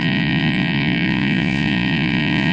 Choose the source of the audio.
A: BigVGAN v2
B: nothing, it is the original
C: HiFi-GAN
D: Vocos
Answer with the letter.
D